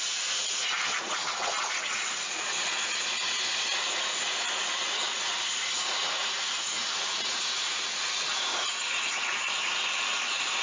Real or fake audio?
fake